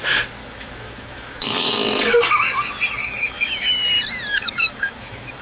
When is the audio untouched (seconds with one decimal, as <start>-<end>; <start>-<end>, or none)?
0.0-0.4; 1.7-3.0; 3.9-4.3